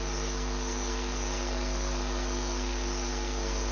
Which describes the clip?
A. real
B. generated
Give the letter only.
B